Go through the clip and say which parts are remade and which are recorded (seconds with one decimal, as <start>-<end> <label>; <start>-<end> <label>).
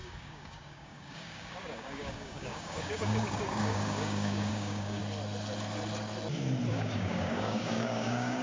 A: 0.0-5.0 remade; 5.0-6.7 recorded; 6.7-8.4 remade